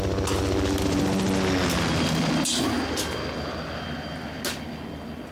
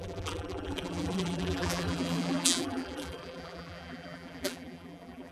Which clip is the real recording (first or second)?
first